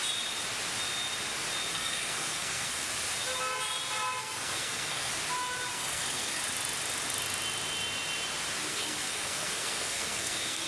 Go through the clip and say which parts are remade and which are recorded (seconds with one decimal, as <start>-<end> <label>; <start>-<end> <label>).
0.0-1.7 recorded; 1.7-2.9 remade; 2.9-4.2 recorded; 4.2-5.1 remade; 5.1-5.7 recorded; 5.7-6.4 remade; 6.4-8.7 recorded; 8.7-10.7 remade